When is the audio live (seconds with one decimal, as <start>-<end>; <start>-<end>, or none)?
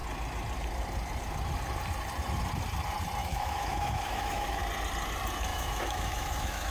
0.0-3.2; 4.6-5.5